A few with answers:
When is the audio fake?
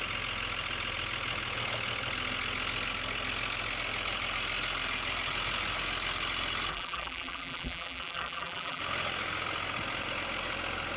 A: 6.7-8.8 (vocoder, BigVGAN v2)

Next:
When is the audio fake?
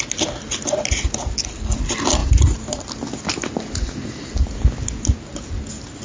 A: 2.2-2.9 (vocoder, BigVGAN v2)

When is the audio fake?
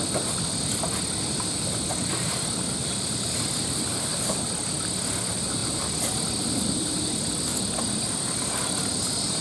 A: 1.9-2.6 (vocoder, BigVGAN v2)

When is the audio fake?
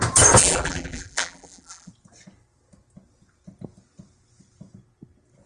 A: 0.4-1.9 (vocoder, BigVGAN v2)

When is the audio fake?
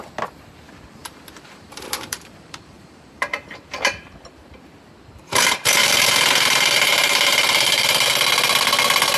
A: 1.0-4.9 (vocoder, BigVGAN v2); 5.8-8.1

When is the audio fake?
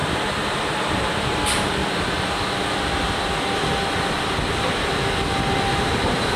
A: 0.0-1.8 (vocoder, BigVGAN v2); 5.6-6.4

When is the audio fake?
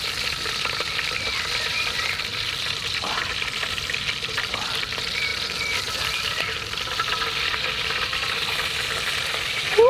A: 0.0-9.9 (vocoder, BigVGAN v2)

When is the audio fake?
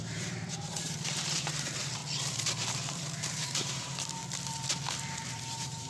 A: 0.0-2.0 (vocoder, BigVGAN v2); 2.9-4.2; 5.1-5.9